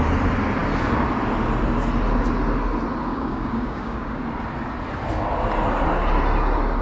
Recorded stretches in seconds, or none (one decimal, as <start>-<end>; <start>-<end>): 0.0-3.1; 4.2-6.8